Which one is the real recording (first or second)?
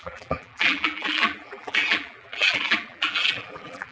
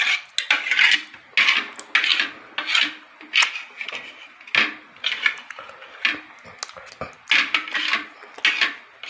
second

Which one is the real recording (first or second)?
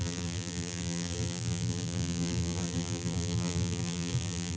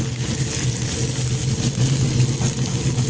second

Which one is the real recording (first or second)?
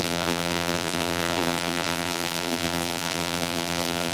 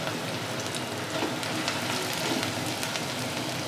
second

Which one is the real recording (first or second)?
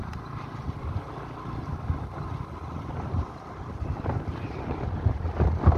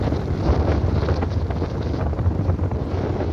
first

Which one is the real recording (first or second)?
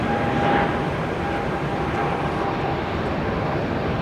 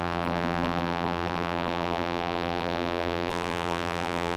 first